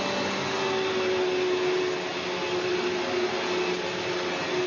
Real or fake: real